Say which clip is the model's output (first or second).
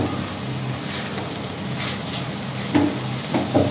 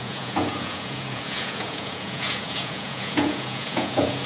second